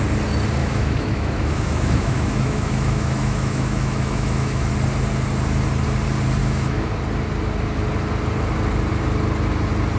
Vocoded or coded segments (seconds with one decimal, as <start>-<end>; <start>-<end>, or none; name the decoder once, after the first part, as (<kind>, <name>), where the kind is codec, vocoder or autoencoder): 0.6-4.7 (autoencoder, DAC-VAE); 6.4-6.9